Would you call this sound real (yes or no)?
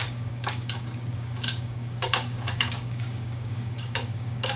no